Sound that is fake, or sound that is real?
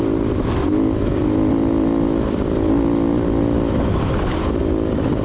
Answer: real